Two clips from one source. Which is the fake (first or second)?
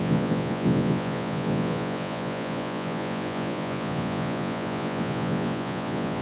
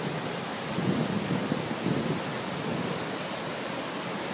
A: first